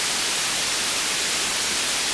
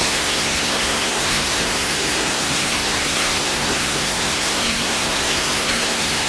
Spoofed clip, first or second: second